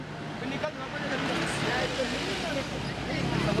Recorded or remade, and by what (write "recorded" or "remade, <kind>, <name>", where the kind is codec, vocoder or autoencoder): recorded